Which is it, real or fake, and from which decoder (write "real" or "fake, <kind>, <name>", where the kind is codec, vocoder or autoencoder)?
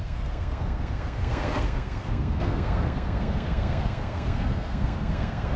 fake, codec, SNAC